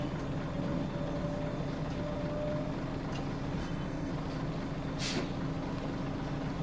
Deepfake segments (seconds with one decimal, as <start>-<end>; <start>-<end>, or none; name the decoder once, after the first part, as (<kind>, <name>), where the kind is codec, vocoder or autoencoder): 3.6-4.1 (codec, SNAC)